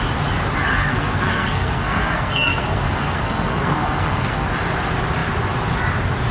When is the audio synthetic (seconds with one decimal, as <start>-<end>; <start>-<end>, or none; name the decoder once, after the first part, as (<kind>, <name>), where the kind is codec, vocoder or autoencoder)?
0.7-4.5 (codec, SNAC)